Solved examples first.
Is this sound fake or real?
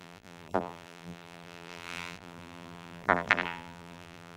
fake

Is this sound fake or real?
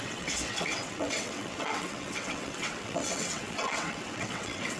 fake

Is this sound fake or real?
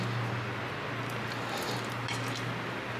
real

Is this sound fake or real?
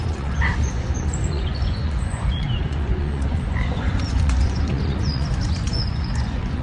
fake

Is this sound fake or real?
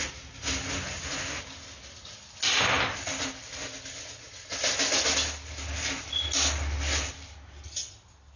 real